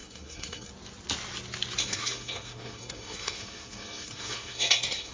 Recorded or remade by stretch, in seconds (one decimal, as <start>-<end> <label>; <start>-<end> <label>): 0.0-0.7 remade; 0.7-1.8 recorded; 1.8-5.1 remade